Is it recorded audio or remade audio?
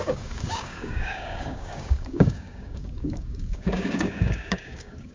remade